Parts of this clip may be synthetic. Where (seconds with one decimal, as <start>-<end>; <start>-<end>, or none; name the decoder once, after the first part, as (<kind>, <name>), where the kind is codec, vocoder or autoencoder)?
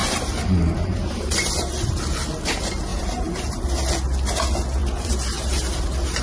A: 0.0-2.3 (vocoder, BigVGAN v2); 2.9-3.6; 4.8-6.2